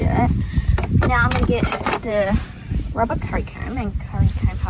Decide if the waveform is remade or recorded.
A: remade